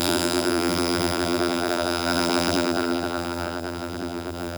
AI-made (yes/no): yes